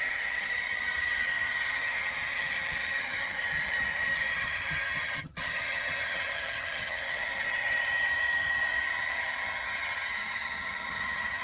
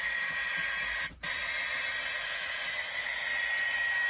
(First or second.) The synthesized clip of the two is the first